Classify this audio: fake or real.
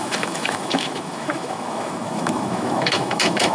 fake